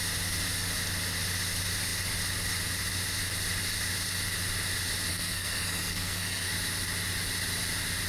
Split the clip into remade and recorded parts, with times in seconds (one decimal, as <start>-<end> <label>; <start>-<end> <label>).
0.0-5.1 recorded; 5.1-6.5 remade; 6.5-8.1 recorded